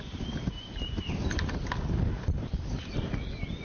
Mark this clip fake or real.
real